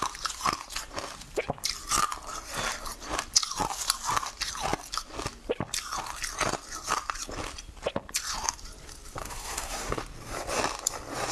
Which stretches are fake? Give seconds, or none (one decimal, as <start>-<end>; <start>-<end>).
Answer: 9.2-10.0